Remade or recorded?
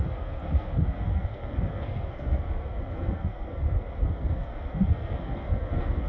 remade